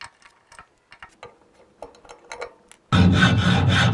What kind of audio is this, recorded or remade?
recorded